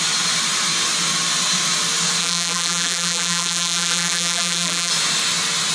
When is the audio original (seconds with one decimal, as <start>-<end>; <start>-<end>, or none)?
0.0-2.2; 4.9-5.7